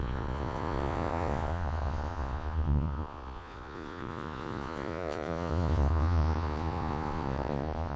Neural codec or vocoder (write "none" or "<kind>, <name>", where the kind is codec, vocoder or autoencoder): vocoder, Vocos